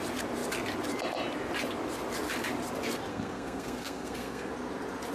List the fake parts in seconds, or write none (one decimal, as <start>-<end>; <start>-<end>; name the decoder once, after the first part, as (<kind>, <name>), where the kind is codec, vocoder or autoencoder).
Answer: 3.1-4.5 (codec, SNAC)